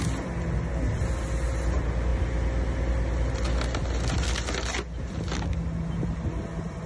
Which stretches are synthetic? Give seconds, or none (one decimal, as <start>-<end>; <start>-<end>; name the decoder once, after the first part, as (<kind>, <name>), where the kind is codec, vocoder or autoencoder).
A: none